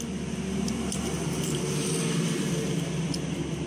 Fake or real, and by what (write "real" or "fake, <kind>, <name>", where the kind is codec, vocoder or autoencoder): real